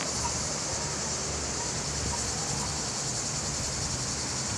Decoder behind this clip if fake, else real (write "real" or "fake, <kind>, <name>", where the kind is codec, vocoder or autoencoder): fake, vocoder, BigVGAN v2